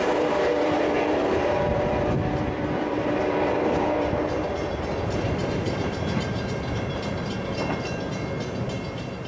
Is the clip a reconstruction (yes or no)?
yes